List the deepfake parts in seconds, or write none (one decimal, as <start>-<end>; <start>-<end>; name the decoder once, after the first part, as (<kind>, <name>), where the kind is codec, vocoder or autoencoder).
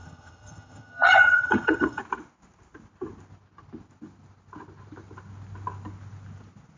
0.0-2.0 (vocoder, HiFi-GAN)